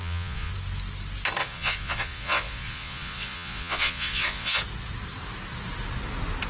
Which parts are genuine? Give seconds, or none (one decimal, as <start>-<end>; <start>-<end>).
0.5-1.4; 4.6-6.5